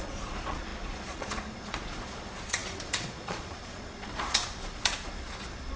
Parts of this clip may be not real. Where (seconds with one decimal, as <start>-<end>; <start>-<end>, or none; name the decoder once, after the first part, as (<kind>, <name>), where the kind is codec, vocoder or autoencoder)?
0.0-5.8 (vocoder, Vocos)

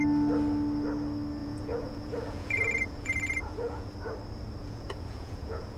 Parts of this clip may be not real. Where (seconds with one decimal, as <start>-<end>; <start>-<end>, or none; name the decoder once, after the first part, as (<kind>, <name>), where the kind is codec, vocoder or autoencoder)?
1.4-3.9 (vocoder, Vocos); 4.6-5.8

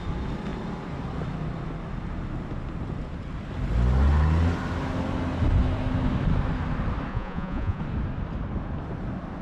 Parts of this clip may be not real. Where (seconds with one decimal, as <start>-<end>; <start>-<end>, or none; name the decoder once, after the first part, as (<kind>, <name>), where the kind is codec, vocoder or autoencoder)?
7.1-7.8 (vocoder, Vocos)

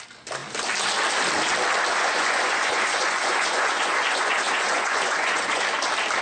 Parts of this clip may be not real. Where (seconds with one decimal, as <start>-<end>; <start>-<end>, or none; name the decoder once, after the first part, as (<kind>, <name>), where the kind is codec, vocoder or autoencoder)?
1.9-5.6 (vocoder, Vocos)

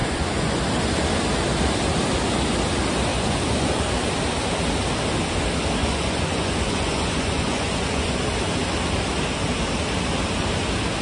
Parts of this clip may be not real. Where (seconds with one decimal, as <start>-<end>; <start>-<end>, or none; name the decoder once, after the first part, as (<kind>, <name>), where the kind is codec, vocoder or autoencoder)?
0.0-0.6 (vocoder, Vocos); 3.1-3.9; 5.8-8.2